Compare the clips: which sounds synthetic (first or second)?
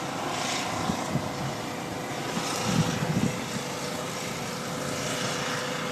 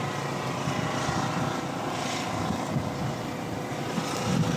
second